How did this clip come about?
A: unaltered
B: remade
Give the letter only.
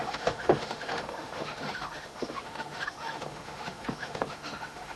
B